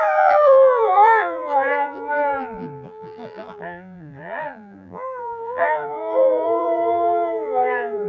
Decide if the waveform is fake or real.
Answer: fake